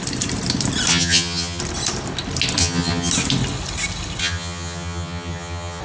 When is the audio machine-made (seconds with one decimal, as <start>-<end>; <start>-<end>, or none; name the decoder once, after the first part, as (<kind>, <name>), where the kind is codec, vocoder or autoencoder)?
0.9-1.6 (vocoder, HiFi-GAN); 2.6-3.1; 4.2-5.8